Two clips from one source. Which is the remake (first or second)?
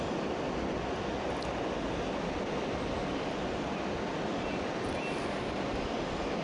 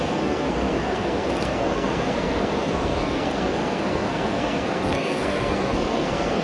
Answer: second